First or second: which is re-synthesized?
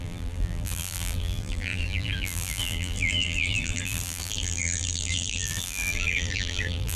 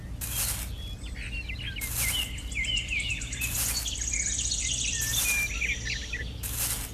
first